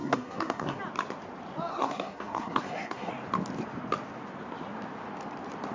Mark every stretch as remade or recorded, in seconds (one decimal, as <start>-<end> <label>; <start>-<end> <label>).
0.0-0.8 remade; 0.8-1.7 recorded; 1.7-3.1 remade; 3.1-5.7 recorded